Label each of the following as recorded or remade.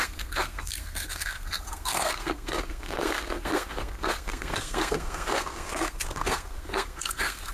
remade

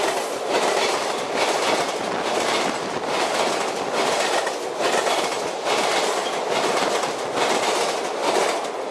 recorded